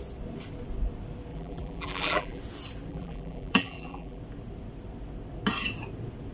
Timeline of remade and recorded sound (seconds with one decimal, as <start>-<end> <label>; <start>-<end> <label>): 0.0-1.3 recorded; 1.3-2.4 remade; 2.4-2.9 recorded; 2.9-4.2 remade; 4.2-6.3 recorded

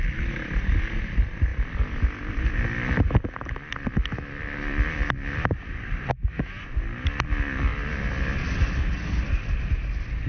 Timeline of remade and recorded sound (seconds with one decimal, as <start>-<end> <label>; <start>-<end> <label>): 0.0-10.3 recorded